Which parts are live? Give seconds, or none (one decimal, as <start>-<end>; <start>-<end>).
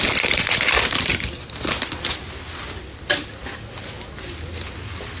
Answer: 0.0-5.2